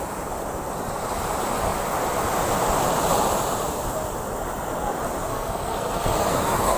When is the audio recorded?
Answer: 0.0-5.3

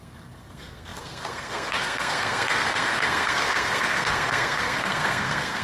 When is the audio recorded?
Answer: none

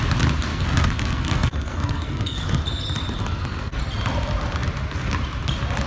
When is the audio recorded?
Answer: 0.0-0.5; 2.6-3.2; 3.8-5.9

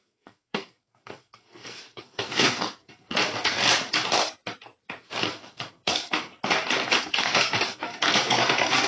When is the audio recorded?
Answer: 3.6-5.2; 6.4-7.0

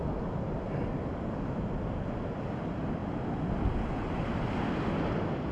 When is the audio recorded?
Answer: 0.0-5.5